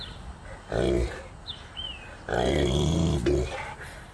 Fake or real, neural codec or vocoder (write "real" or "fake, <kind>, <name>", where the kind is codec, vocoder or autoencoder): fake, vocoder, BigVGAN v2